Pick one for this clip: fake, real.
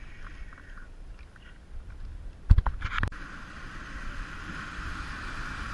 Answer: real